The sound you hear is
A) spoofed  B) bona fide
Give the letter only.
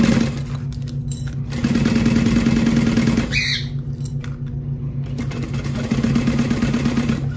B